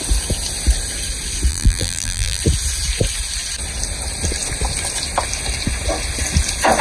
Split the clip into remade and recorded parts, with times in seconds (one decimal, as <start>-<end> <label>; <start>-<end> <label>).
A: 0.0-1.5 recorded; 1.5-2.4 remade; 2.4-6.8 recorded